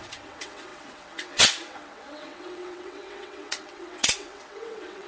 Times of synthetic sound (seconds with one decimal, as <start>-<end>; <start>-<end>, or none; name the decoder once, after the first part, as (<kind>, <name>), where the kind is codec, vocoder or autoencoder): 0.0-5.1 (vocoder, WaveNeXt)